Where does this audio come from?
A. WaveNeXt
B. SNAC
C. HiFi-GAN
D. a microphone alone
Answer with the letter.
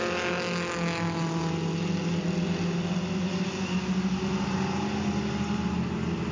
D